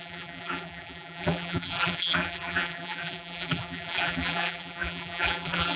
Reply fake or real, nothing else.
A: fake